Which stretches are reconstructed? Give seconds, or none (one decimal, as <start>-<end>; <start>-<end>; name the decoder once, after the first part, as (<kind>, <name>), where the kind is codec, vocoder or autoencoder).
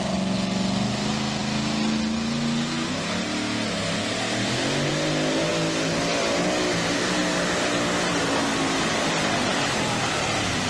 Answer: 8.9-10.7 (vocoder, BigVGAN v2)